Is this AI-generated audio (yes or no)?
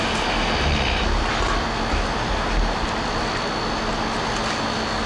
no